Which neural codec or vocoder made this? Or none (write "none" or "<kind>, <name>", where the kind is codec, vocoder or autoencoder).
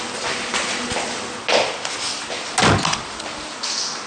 none